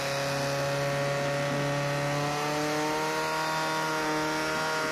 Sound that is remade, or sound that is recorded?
recorded